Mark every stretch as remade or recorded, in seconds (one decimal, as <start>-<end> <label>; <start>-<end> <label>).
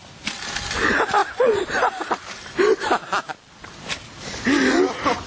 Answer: 0.0-0.6 remade; 0.6-1.2 recorded; 1.2-2.6 remade; 2.6-5.3 recorded